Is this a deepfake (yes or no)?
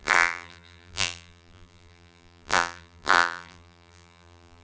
yes